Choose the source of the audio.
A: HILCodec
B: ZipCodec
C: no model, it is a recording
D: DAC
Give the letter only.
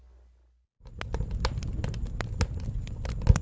C